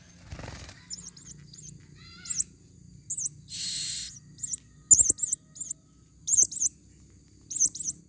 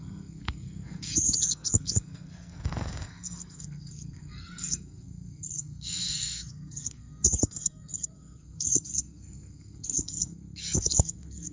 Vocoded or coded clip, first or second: second